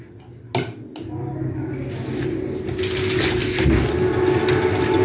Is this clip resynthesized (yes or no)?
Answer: no